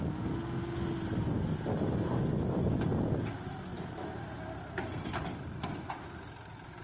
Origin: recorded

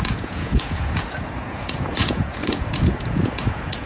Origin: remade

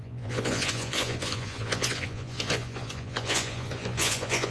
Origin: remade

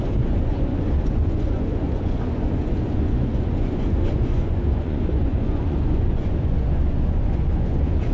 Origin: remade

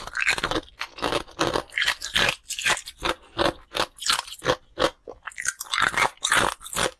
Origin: recorded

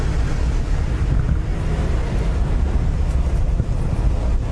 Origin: recorded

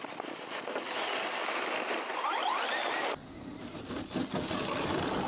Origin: recorded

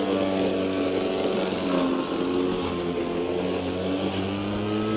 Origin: recorded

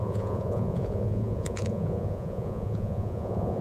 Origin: remade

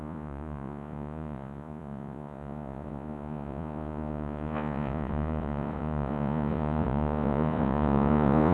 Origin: remade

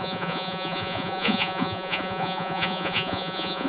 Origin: remade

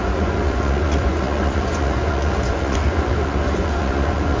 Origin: remade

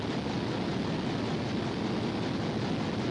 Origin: recorded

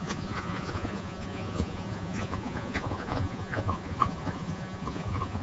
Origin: remade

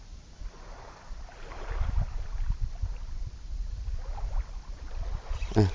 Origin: recorded